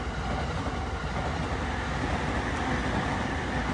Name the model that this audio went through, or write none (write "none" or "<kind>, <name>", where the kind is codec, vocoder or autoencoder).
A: none